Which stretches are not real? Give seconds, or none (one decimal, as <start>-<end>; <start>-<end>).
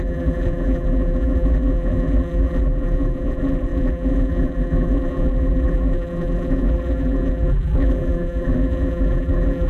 0.0-9.7